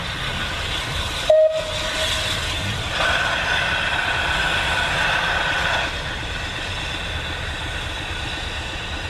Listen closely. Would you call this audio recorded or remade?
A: recorded